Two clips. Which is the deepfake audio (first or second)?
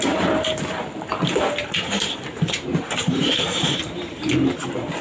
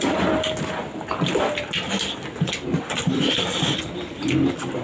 first